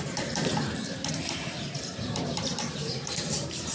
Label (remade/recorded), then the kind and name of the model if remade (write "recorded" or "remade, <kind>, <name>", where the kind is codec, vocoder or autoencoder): remade, vocoder, BigVGAN v2